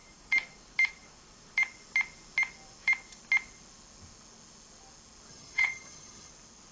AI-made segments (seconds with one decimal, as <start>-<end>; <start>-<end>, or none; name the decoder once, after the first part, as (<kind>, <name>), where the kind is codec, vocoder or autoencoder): 5.3-6.3 (vocoder, HiFi-GAN)